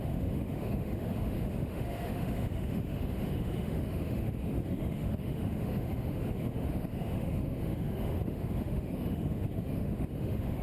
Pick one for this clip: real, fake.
fake